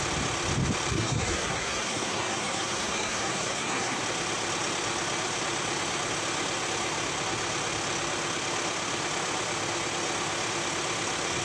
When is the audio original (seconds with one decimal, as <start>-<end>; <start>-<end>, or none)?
0.0-0.9; 4.0-11.4